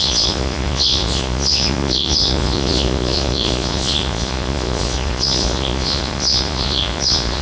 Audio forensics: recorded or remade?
remade